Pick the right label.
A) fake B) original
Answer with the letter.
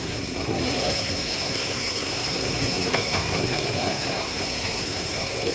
A